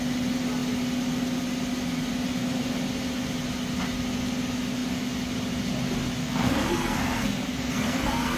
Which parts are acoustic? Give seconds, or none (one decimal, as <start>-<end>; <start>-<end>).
0.0-6.2